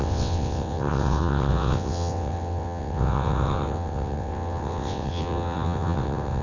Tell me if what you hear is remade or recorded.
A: remade